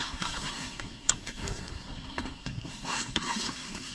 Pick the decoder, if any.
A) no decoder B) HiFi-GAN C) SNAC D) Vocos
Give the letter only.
C